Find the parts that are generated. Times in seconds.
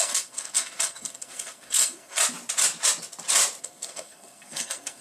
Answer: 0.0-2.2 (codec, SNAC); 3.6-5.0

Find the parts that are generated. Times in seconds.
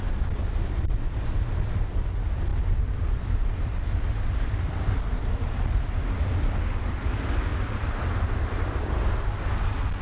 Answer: 2.5-5.7 (vocoder, BigVGAN v2)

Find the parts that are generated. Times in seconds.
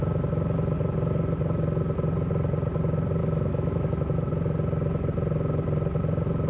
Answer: 3.2-4.3 (autoencoder, DAC-VAE)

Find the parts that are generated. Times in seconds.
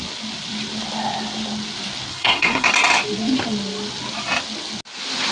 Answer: 2.1-2.7 (codec, SNAC)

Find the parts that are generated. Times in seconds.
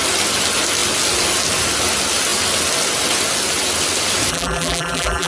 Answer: 4.3-5.3 (vocoder, BigVGAN v2)